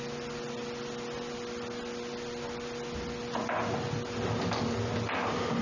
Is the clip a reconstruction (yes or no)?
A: no